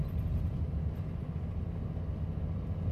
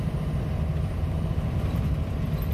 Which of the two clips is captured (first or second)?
second